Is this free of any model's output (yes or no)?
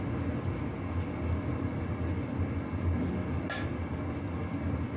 yes